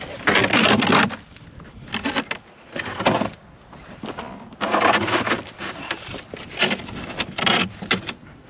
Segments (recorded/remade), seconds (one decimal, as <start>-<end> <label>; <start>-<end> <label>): 0.0-0.4 recorded; 0.4-2.7 remade; 2.7-4.7 recorded; 4.7-7.7 remade; 7.7-8.5 recorded